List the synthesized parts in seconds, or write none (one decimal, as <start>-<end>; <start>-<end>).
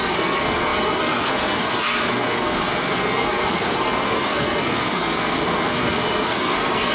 0.0-6.9